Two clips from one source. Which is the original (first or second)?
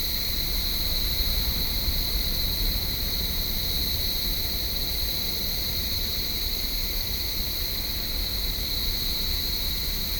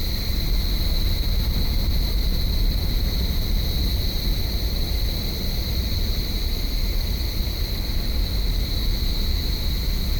second